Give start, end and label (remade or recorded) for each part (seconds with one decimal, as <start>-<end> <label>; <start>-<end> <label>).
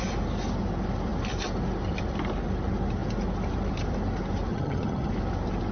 0.0-4.5 recorded; 4.5-5.1 remade; 5.1-5.7 recorded